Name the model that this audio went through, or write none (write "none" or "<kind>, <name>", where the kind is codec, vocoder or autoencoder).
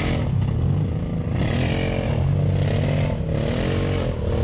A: none